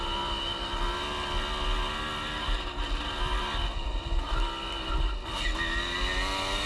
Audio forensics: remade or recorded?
recorded